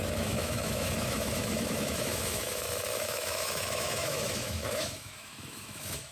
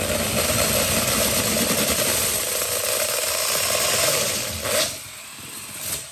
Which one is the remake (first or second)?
first